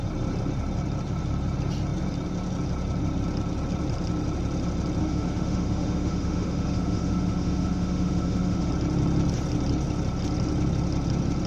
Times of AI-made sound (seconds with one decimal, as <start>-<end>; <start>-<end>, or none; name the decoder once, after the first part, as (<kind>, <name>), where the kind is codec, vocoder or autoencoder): 5.0-8.7 (autoencoder, DAC-VAE)